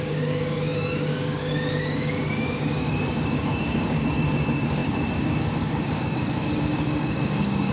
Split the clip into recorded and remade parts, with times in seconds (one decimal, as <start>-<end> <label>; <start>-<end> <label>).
0.0-7.7 remade